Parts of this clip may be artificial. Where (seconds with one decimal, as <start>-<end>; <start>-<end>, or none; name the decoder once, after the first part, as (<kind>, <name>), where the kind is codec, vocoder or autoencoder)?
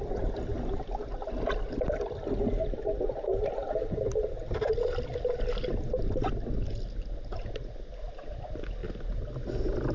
none